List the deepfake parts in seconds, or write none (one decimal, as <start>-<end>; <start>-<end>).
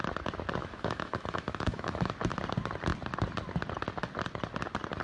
0.6-2.1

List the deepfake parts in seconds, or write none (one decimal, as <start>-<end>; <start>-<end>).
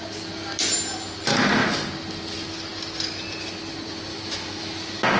4.1-4.7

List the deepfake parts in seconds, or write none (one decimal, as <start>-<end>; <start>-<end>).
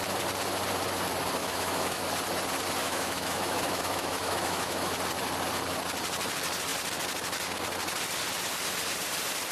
1.4-2.0; 2.8-4.9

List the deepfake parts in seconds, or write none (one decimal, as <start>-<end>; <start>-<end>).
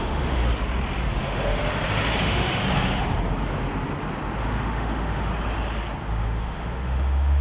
0.0-0.4; 1.2-1.6; 2.2-2.6; 4.4-5.3; 6.1-7.4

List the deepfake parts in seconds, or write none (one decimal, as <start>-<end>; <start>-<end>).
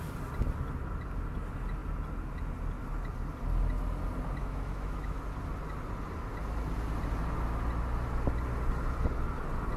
4.4-5.2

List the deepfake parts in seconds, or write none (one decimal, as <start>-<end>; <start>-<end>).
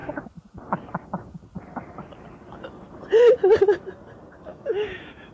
4.5-5.3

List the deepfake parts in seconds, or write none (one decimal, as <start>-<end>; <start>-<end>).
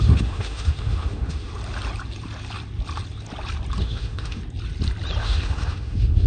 0.0-1.5; 3.8-4.4; 5.2-6.3